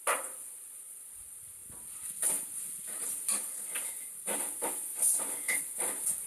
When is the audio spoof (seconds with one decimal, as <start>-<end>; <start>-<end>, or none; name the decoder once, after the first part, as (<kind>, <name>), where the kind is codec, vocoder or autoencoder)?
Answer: none